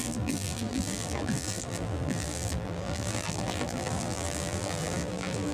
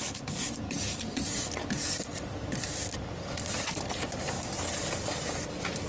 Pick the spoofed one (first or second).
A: first